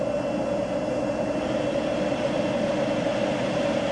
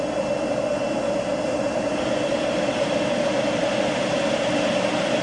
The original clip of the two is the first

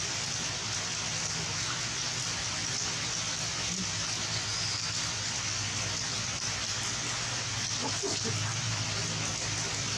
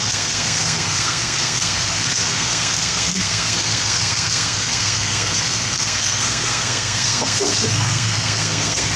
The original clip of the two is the first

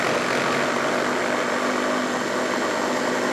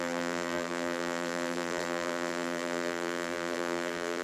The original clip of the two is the first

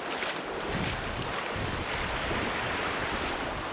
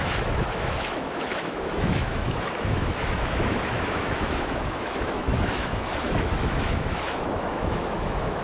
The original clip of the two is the first